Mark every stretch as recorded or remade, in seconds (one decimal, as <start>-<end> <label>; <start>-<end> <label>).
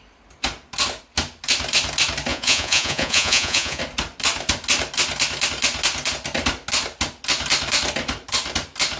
0.0-2.3 recorded; 2.3-3.8 remade; 3.8-9.0 recorded